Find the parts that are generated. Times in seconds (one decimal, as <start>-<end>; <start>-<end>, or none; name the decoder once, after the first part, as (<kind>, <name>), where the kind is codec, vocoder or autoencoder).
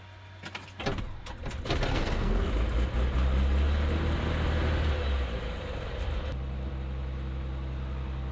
1.9-2.5 (codec, SNAC)